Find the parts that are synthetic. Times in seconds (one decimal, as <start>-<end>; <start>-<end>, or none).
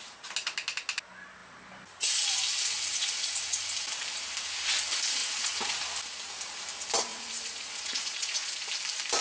2.9-3.6; 5.2-5.7; 7.1-8.7